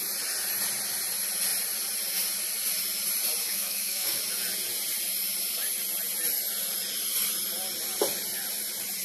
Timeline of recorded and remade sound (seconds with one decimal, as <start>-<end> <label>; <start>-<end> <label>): 0.0-3.4 recorded; 3.4-4.2 remade; 4.2-9.0 recorded